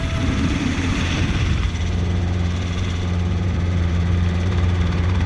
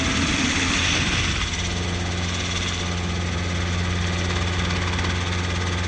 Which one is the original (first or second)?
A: second